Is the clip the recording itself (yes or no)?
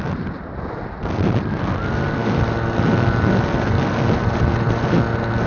yes